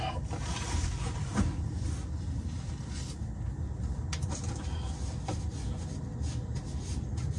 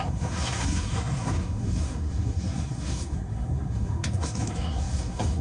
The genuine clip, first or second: first